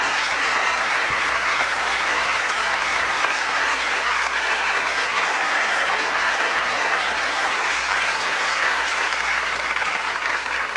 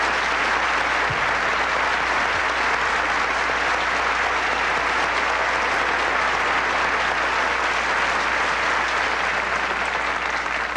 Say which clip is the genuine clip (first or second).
second